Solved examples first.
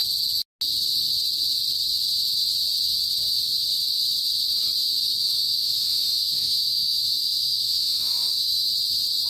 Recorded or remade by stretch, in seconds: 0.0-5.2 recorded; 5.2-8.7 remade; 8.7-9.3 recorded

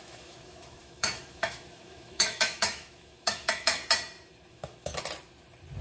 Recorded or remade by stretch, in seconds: 0.0-3.8 remade; 3.8-4.5 recorded; 4.5-4.9 remade; 4.9-5.8 recorded

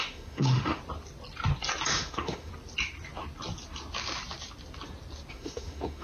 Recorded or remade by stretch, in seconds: 0.0-0.8 remade; 0.8-1.9 recorded; 1.9-2.5 remade; 2.5-5.3 recorded; 5.3-6.0 remade

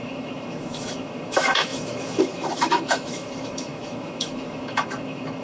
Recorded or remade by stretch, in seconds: 0.0-5.4 remade

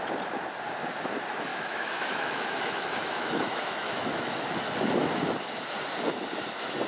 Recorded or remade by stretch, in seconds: 0.0-1.5 recorded; 1.5-4.5 remade; 4.5-6.9 recorded

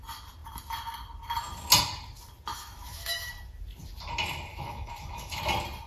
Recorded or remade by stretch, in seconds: 0.0-2.5 recorded; 2.5-3.3 remade; 3.3-4.5 recorded; 4.5-5.4 remade; 5.4-5.9 recorded

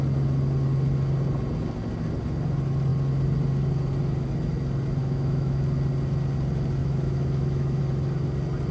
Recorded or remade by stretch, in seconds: 0.0-5.0 recorded; 5.0-5.6 remade; 5.6-6.8 recorded; 6.8-7.8 remade; 7.8-8.7 recorded